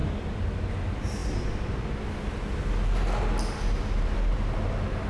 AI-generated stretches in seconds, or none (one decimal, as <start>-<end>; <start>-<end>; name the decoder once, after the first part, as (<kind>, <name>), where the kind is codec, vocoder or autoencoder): none